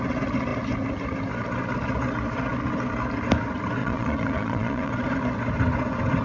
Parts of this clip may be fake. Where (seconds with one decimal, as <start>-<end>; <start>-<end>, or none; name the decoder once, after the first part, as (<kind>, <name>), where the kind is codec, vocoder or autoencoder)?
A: 3.8-4.9 (vocoder, Vocos)